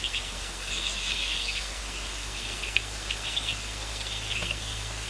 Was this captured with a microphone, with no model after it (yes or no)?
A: no